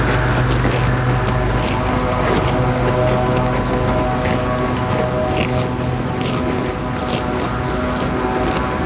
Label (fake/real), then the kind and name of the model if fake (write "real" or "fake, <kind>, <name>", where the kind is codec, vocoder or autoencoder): real